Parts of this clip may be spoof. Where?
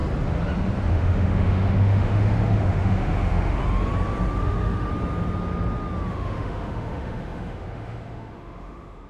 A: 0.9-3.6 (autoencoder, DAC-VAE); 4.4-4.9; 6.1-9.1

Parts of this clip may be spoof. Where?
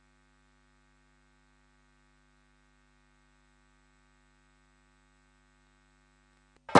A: none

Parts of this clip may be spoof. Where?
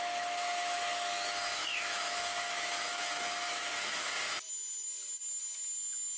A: 0.0-4.1 (autoencoder, DAC-VAE)